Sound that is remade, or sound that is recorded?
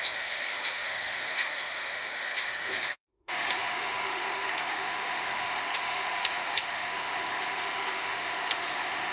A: remade